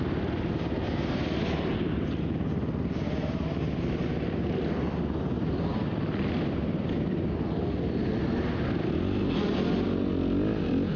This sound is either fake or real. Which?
real